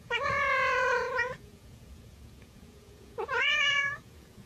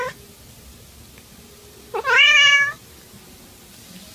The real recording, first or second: second